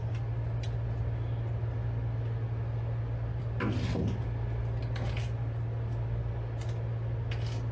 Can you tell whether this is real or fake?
real